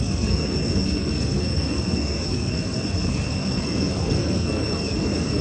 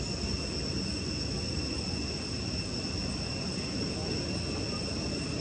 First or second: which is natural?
second